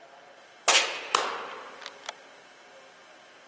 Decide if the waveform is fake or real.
real